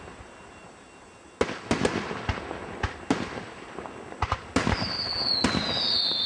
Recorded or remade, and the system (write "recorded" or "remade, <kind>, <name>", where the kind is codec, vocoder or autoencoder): recorded